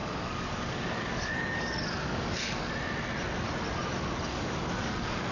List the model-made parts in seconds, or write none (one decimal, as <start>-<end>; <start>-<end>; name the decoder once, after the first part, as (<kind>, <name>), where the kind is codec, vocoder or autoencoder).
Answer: 0.0-2.7 (codec, DAC); 4.3-5.3